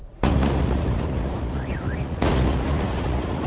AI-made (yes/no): yes